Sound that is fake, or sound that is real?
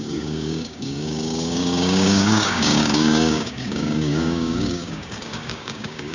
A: fake